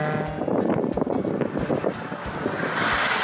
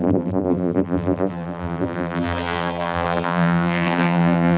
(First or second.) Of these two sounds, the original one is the first